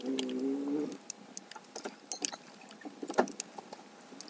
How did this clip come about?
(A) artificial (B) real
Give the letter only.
B